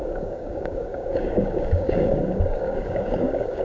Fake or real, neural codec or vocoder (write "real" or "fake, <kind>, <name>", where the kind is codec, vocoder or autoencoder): fake, codec, DAC